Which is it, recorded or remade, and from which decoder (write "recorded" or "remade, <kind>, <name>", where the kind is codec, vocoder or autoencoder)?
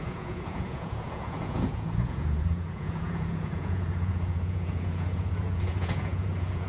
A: remade, vocoder, Vocos